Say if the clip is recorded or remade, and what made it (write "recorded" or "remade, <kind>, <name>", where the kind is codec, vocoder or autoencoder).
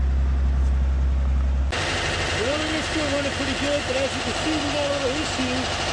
recorded